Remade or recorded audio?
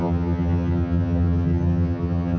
remade